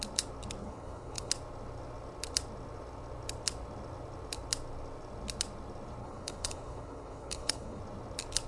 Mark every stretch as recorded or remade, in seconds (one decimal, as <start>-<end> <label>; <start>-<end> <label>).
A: 0.0-0.6 recorded; 0.6-1.3 remade; 1.3-6.0 recorded; 6.0-7.8 remade; 7.8-8.5 recorded